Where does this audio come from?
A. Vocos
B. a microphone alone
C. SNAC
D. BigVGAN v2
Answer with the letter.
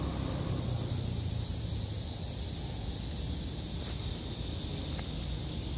B